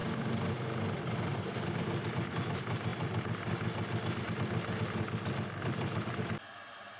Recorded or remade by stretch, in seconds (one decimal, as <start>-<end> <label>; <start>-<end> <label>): 0.0-7.0 recorded